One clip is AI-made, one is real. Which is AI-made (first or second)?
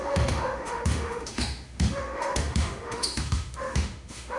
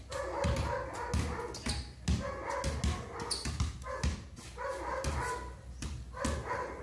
first